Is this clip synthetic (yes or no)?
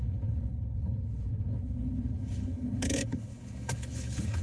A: yes